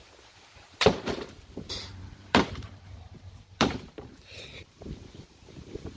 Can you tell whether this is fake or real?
fake